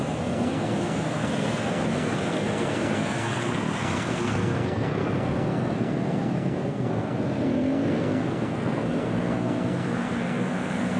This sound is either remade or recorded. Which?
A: remade